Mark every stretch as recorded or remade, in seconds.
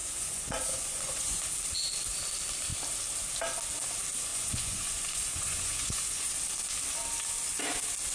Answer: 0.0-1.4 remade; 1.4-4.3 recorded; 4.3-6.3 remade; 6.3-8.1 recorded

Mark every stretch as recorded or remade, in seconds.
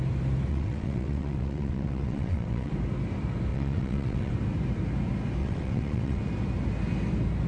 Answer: 0.0-0.5 recorded; 0.5-2.7 remade; 2.7-3.5 recorded; 3.5-4.3 remade; 4.3-5.4 recorded; 5.4-6.2 remade; 6.2-7.5 recorded